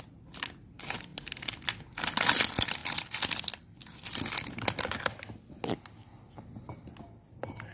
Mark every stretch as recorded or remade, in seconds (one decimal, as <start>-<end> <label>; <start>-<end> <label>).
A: 0.0-7.7 recorded